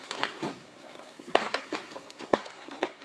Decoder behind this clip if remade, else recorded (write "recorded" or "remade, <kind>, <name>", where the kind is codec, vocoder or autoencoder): remade, codec, SNAC